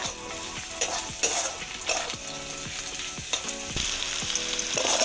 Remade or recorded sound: recorded